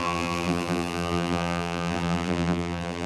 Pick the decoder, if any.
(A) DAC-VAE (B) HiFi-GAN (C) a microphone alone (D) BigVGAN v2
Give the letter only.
D